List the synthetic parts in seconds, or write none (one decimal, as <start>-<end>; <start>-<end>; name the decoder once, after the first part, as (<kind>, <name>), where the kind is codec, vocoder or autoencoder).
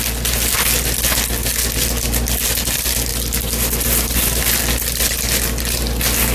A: 3.1-4.6 (vocoder, BigVGAN v2)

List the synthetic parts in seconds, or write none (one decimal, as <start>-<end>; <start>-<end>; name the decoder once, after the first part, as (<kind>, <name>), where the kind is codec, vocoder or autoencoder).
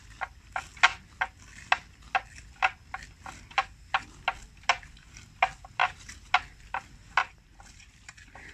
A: 5.8-6.3 (vocoder, BigVGAN v2); 7.2-8.5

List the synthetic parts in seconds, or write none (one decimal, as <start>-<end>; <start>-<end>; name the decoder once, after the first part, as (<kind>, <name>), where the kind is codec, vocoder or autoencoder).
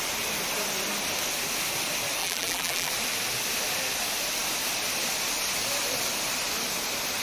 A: 2.2-2.9 (vocoder, BigVGAN v2)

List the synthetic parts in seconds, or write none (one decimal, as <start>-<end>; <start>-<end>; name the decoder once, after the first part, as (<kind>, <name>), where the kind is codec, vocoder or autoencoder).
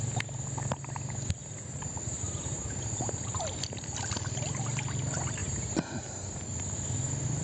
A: 1.4-3.4 (vocoder, BigVGAN v2); 5.4-6.6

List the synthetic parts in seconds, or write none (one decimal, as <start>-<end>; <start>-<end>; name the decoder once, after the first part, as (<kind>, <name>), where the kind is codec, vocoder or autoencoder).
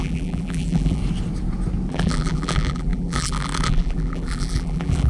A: 0.0-1.0 (vocoder, BigVGAN v2); 1.9-5.1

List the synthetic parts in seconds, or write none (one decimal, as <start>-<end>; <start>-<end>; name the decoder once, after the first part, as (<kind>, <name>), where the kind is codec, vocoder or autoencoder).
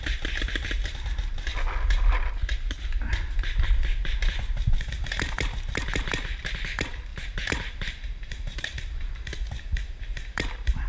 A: 7.1-9.1 (vocoder, BigVGAN v2)